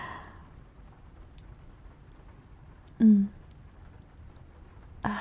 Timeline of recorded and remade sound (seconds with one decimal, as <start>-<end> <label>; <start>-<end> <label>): 0.0-5.2 recorded